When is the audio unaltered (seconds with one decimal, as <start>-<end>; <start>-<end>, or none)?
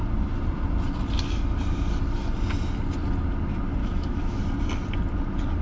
0.0-3.8; 4.4-5.6